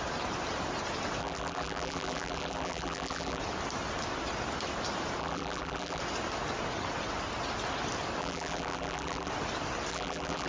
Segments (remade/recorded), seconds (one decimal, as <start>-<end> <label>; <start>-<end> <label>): 0.0-1.2 recorded; 1.2-3.4 remade; 3.4-5.2 recorded; 5.2-6.0 remade; 6.0-8.2 recorded; 8.2-9.3 remade; 9.3-9.9 recorded; 9.9-10.5 remade